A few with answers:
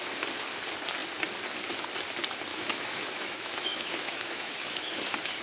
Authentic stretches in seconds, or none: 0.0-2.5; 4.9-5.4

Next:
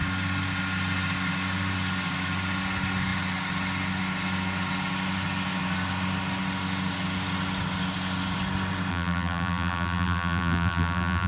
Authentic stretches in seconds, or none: 0.0-8.9

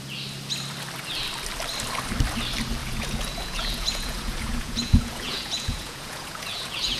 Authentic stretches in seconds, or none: 0.0-2.8

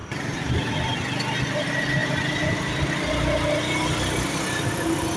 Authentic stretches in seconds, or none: 0.7-5.2